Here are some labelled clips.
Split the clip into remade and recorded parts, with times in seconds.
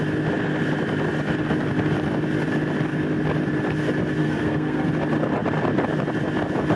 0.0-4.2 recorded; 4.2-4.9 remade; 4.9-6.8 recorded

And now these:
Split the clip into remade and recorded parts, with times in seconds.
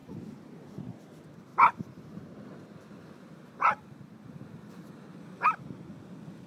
0.0-6.5 recorded